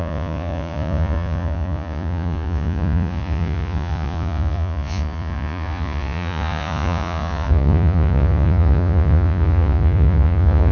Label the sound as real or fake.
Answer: fake